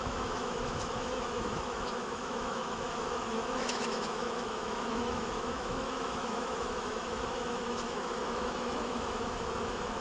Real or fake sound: fake